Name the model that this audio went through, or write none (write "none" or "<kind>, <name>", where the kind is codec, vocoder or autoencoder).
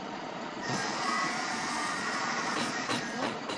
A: vocoder, Vocos